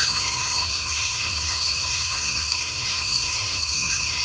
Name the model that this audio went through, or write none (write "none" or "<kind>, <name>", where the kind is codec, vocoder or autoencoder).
codec, SNAC